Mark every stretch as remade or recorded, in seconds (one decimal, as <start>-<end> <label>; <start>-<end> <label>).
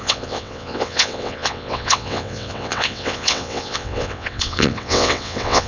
0.0-5.7 remade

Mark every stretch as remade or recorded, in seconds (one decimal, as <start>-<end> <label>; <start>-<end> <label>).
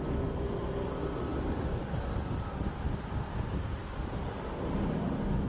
0.0-5.5 recorded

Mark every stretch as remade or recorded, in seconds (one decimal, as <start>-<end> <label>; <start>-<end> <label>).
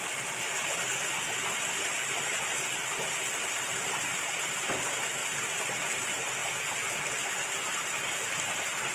0.0-6.4 recorded; 6.4-7.5 remade; 7.5-8.9 recorded